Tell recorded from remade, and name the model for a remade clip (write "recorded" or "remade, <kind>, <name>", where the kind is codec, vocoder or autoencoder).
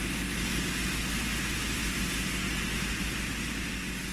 recorded